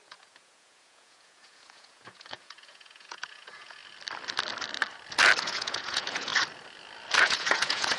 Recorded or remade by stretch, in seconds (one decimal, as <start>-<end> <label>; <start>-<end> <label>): 0.0-3.8 remade; 3.8-5.4 recorded; 5.4-6.3 remade; 6.3-7.2 recorded; 7.2-8.0 remade